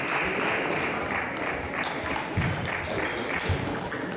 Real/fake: real